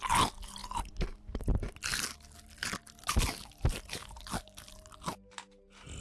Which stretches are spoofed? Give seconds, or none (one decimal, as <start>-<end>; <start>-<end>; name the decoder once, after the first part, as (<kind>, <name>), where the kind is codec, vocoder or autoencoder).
none